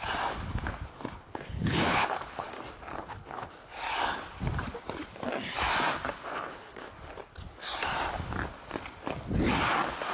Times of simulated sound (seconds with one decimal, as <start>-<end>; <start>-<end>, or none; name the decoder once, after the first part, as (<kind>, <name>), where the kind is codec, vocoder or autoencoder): 0.9-2.5 (codec, HILCodec); 2.9-3.5; 6.3-6.9